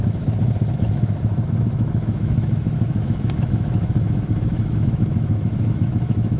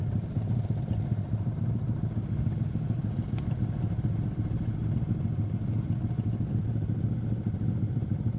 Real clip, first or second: second